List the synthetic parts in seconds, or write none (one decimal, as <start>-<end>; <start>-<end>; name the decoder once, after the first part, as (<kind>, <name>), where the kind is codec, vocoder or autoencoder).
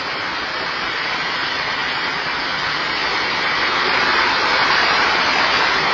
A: 3.0-5.1 (vocoder, BigVGAN v2)